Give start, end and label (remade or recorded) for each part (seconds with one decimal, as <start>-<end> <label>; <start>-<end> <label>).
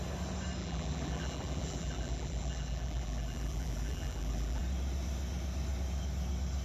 0.0-0.6 recorded; 0.6-4.6 remade; 4.6-6.6 recorded